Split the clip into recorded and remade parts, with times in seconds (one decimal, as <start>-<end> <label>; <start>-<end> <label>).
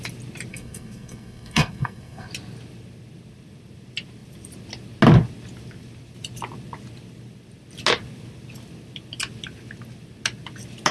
0.0-0.5 recorded; 0.5-2.3 remade; 2.3-10.9 recorded